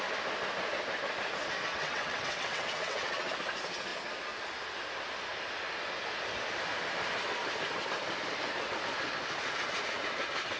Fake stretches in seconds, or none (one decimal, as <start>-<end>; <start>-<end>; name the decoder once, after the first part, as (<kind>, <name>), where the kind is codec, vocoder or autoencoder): 1.7-3.3 (vocoder, WaveNeXt)